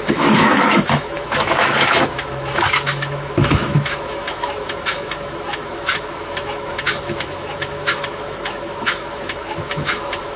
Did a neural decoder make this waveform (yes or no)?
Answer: yes